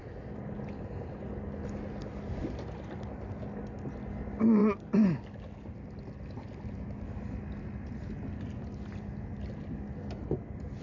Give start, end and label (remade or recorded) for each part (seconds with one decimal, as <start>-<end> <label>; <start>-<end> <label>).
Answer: 0.0-10.8 recorded